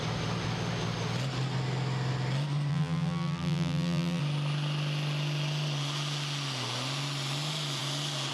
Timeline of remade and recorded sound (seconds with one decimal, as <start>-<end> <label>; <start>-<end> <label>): 0.0-2.7 recorded; 2.7-4.2 remade; 4.2-8.3 recorded